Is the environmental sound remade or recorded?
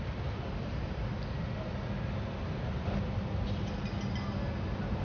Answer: recorded